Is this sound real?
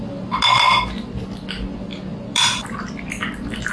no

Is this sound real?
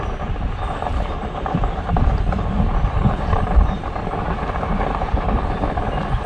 no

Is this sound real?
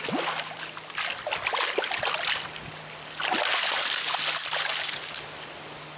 yes